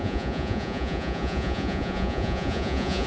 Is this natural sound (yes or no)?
no